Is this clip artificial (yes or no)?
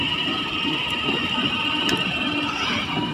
no